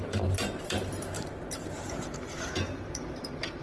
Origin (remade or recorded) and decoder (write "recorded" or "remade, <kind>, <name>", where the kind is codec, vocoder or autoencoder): remade, vocoder, BigVGAN v2